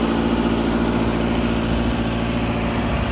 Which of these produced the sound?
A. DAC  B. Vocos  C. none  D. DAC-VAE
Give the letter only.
C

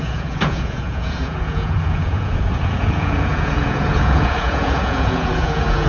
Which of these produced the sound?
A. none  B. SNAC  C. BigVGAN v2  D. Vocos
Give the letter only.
D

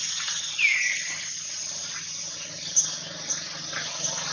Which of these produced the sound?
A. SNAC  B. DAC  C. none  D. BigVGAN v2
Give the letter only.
C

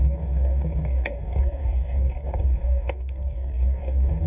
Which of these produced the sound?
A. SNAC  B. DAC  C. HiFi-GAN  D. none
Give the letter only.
B